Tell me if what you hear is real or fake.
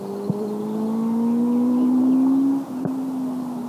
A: real